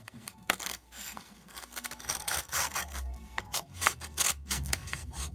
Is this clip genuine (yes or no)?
no